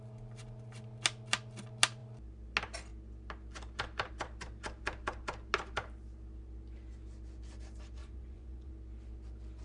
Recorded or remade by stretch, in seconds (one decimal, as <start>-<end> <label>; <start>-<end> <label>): 0.0-8.0 recorded; 8.0-8.7 remade; 8.7-9.6 recorded